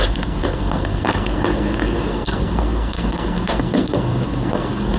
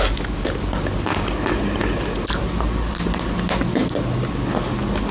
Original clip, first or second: second